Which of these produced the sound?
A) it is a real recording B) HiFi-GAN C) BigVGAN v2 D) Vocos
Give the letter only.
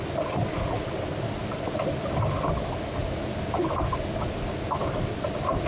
A